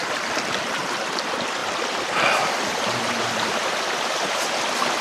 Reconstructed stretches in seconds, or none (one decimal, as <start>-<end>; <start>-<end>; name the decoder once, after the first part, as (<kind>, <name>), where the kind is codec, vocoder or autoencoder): 1.6-2.5 (vocoder, BigVGAN v2)